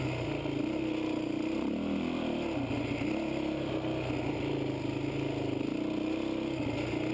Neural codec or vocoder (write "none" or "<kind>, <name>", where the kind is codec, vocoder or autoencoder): none